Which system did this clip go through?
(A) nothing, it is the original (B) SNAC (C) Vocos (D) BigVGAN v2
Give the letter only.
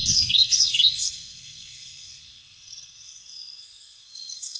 B